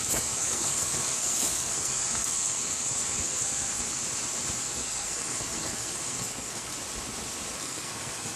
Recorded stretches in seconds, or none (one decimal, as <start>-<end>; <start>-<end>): 4.0-4.6; 6.7-7.6